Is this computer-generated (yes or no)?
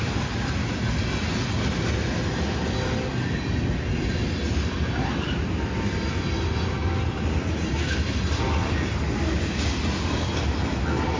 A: no